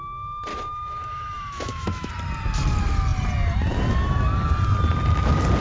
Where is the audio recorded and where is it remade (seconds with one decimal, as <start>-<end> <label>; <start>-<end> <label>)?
0.0-0.5 recorded; 0.5-2.1 remade; 2.1-5.6 recorded